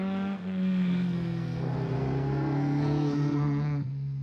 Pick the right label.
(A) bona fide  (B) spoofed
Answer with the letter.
B